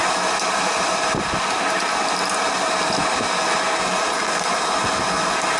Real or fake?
real